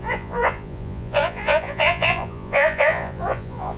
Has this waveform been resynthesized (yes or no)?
yes